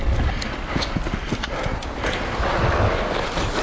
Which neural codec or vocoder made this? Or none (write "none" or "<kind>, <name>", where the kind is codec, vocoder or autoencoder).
none